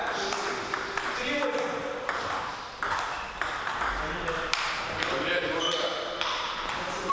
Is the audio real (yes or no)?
yes